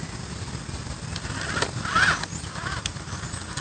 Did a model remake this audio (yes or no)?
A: no